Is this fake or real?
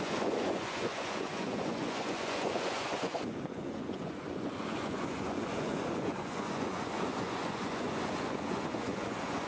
fake